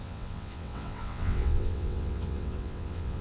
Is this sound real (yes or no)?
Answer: no